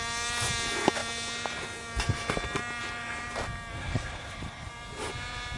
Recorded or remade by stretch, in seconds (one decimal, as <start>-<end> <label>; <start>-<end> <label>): 0.0-3.8 recorded; 3.8-4.7 remade; 4.7-5.6 recorded